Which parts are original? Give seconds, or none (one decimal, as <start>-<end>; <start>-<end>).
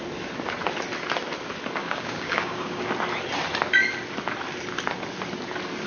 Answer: 0.0-1.8; 2.9-5.9